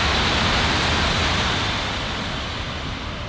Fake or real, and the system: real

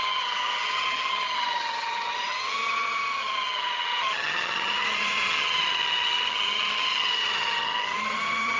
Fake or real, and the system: fake, vocoder, HiFi-GAN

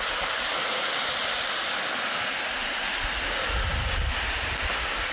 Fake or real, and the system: real